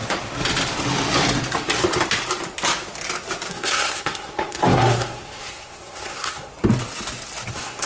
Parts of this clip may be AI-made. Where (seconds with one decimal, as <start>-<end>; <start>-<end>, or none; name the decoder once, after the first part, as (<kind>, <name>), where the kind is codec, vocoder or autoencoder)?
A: 3.5-6.5 (codec, SNAC); 7.5-7.9